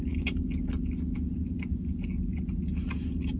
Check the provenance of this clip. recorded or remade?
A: recorded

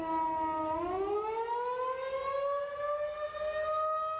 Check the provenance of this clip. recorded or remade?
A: recorded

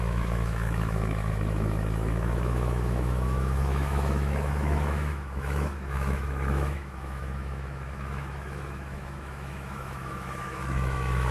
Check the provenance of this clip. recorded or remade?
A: remade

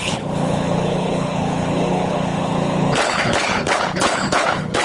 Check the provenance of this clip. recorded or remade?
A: remade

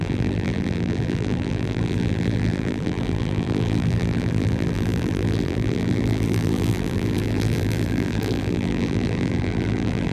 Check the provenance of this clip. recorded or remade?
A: remade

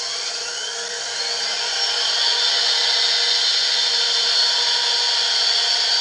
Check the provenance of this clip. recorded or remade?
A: recorded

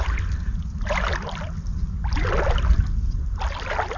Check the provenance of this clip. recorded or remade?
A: recorded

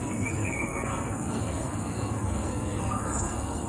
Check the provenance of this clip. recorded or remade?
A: remade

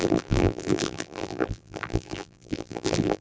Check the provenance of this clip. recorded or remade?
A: remade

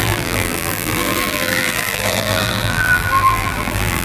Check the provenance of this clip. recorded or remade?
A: remade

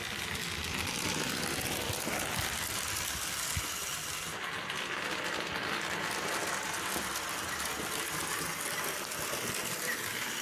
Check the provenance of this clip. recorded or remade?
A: recorded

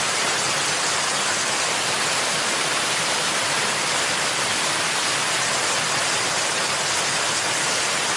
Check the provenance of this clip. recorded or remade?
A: recorded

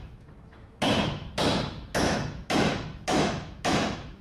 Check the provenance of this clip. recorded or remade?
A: remade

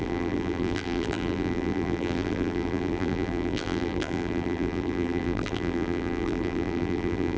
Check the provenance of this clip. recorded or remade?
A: remade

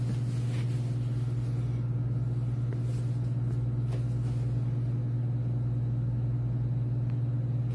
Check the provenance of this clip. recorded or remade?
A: recorded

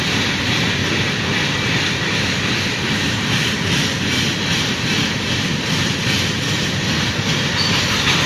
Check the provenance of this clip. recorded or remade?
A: recorded